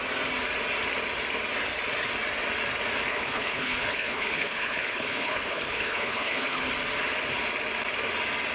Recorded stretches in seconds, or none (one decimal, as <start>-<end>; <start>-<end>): 0.0-3.1; 6.7-8.5

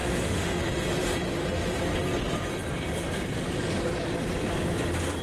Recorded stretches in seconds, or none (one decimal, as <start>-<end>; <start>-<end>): 0.6-5.2

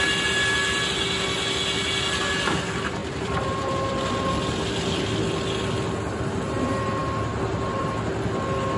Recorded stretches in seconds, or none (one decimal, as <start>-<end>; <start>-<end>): 0.0-3.0; 5.1-8.8

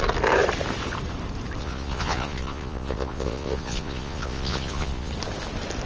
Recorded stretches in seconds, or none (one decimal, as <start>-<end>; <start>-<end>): 0.0-1.6; 5.1-5.9

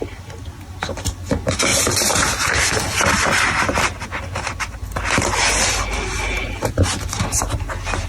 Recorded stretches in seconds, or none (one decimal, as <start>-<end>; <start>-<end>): 0.0-8.1

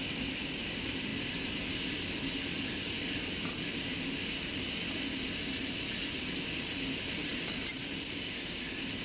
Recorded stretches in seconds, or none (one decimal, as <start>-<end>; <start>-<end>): 0.0-9.0